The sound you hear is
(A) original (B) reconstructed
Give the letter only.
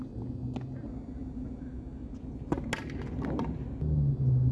A